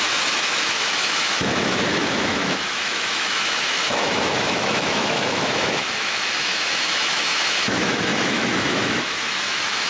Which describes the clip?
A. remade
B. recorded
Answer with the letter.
A